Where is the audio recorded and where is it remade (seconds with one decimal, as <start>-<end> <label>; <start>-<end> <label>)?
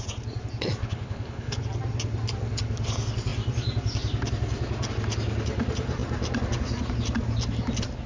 0.0-0.8 recorded; 0.8-1.6 remade; 1.6-8.1 recorded